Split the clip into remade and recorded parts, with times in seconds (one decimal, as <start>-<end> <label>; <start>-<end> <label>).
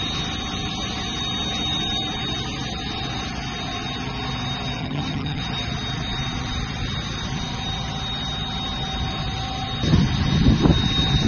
0.0-4.8 recorded; 4.8-5.4 remade; 5.4-11.3 recorded